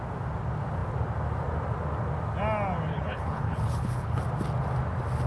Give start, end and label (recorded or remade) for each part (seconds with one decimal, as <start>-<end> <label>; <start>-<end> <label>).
0.0-2.9 recorded; 2.9-4.2 remade; 4.2-5.3 recorded